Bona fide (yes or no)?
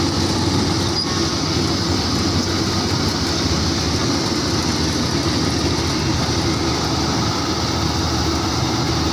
yes